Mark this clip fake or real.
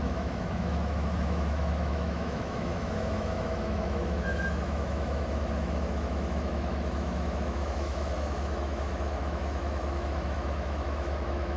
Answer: fake